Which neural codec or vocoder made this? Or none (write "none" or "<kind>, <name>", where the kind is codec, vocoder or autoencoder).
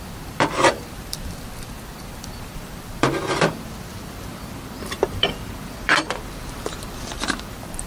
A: vocoder, BigVGAN v2